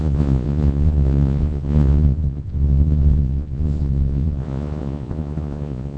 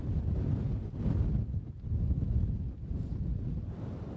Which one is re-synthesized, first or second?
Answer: first